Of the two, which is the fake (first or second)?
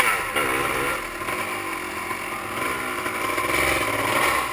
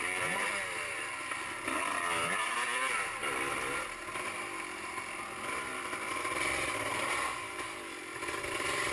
second